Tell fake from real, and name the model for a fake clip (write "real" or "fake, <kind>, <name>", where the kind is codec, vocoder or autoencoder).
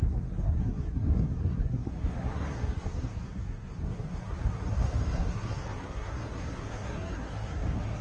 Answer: fake, codec, SNAC